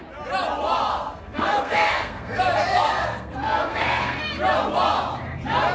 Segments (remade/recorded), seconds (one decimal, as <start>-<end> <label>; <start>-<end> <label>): 0.0-0.9 recorded; 0.9-4.3 remade; 4.3-5.7 recorded